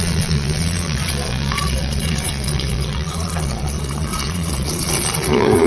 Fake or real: fake